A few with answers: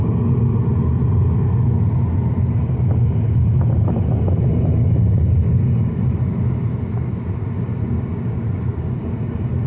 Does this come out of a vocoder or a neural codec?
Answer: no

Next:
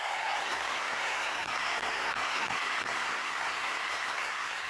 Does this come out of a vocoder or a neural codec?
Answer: yes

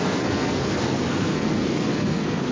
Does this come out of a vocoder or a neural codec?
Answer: yes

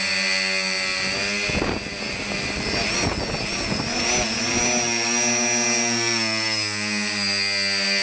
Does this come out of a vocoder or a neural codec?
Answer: no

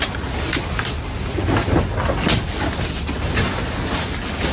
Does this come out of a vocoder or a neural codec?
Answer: no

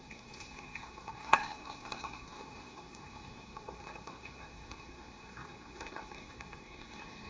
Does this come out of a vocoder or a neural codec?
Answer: yes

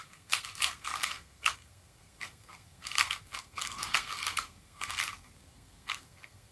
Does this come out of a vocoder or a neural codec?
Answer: yes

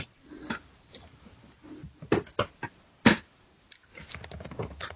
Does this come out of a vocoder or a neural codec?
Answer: no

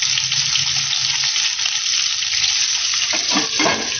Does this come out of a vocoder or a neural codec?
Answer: no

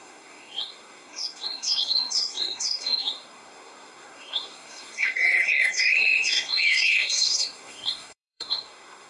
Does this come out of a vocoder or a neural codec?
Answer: yes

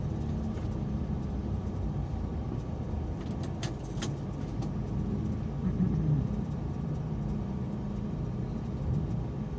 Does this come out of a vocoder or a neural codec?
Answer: no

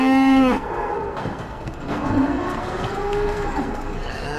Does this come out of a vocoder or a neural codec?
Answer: yes